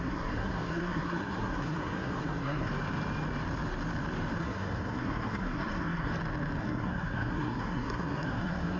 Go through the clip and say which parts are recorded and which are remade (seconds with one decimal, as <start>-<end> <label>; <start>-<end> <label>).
0.0-2.7 remade; 2.7-4.4 recorded; 4.4-6.1 remade; 6.1-6.6 recorded; 6.6-8.8 remade